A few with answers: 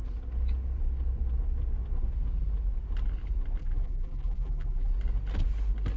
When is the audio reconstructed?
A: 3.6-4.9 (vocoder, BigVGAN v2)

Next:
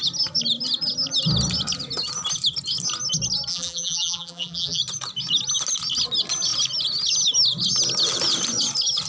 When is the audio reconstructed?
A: 3.5-4.8 (vocoder, BigVGAN v2)

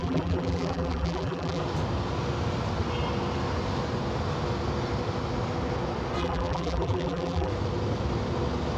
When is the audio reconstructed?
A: 0.0-1.6 (vocoder, BigVGAN v2); 6.2-7.5

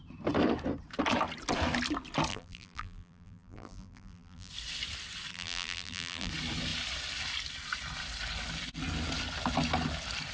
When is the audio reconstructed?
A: 2.3-4.5 (vocoder, BigVGAN v2); 5.3-6.3

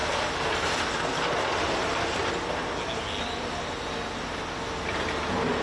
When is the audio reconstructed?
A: none

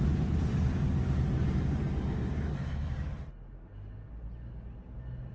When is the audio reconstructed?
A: 0.0-1.9 (vocoder, BigVGAN v2)

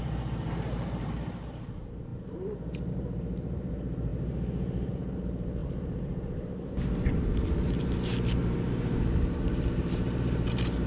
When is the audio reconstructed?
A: 0.0-10.9 (vocoder, BigVGAN v2)

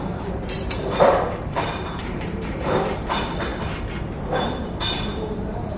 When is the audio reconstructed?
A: 0.0-3.5 (vocoder, BigVGAN v2); 4.6-5.8